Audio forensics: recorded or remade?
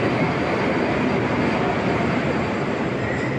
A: recorded